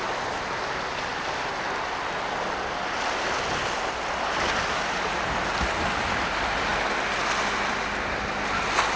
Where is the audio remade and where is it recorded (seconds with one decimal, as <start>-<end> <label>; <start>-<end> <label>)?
0.0-9.0 recorded